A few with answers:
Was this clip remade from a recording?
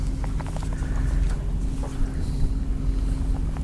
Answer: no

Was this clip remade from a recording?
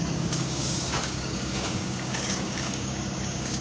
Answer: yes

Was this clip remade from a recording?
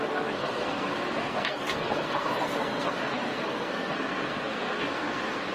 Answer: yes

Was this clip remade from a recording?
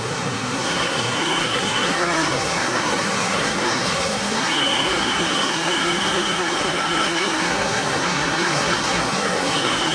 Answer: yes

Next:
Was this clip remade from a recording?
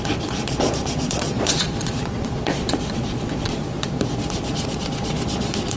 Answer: yes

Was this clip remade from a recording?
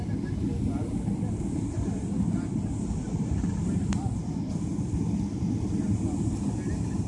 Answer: no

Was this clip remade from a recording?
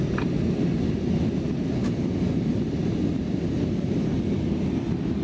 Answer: no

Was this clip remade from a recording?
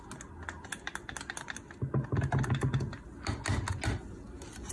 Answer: no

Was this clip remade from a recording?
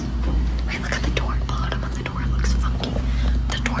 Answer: no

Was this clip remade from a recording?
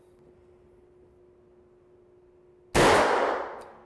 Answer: no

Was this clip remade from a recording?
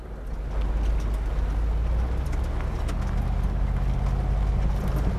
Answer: no